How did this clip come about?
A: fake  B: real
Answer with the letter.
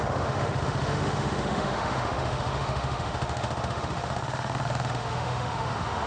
A